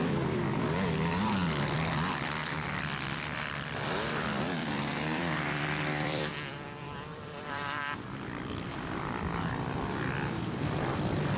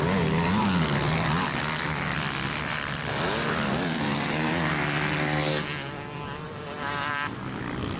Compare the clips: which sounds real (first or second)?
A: second